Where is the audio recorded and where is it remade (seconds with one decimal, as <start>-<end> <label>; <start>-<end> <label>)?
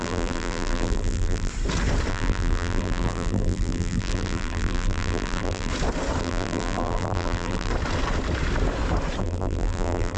0.0-1.5 remade; 1.5-2.1 recorded; 2.1-5.7 remade; 5.7-6.2 recorded; 6.2-7.7 remade; 7.7-9.2 recorded; 9.2-10.2 remade